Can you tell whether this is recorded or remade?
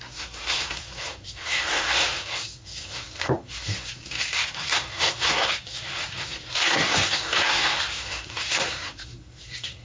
remade